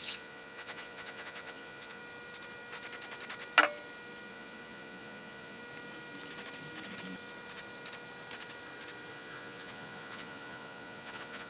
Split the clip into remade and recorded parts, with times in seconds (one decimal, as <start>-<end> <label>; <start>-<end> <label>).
0.0-2.0 remade; 2.0-4.3 recorded; 4.3-5.6 remade; 5.6-9.1 recorded; 9.1-11.5 remade